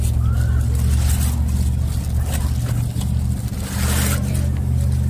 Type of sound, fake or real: real